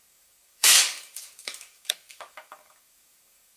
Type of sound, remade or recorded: remade